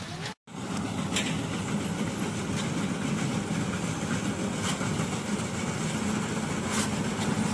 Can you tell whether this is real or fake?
real